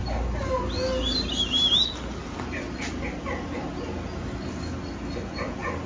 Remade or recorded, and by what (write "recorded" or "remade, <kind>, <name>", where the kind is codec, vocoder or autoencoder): recorded